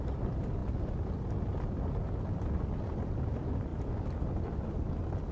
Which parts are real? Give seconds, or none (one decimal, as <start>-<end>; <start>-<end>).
0.0-5.3